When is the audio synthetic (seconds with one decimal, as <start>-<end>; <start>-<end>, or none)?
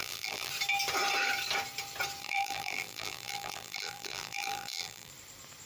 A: 0.0-0.5; 2.2-5.1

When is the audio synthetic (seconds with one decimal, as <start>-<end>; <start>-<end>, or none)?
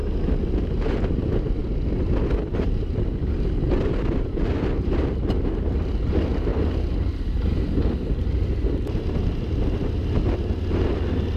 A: none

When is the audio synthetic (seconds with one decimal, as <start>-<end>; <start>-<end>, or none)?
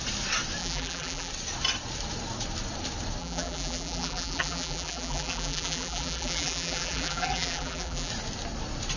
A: 0.6-1.3; 3.2-8.1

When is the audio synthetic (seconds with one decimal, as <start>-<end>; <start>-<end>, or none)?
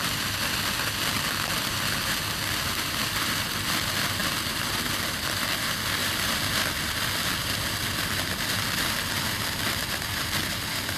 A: 6.0-6.9